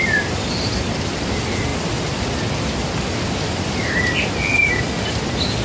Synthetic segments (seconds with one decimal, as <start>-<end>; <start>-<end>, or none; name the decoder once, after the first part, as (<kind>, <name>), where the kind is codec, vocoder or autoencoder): none